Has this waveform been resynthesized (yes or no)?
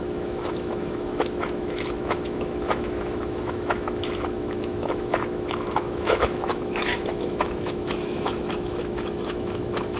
yes